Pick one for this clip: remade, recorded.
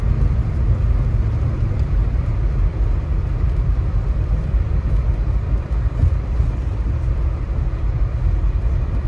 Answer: remade